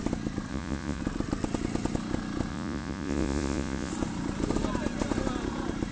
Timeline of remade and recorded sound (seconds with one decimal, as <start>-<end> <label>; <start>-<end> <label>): 0.0-0.5 recorded; 0.5-1.0 remade; 1.0-2.5 recorded; 2.5-3.9 remade; 3.9-5.9 recorded